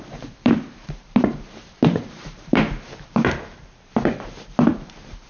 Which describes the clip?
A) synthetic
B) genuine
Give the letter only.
A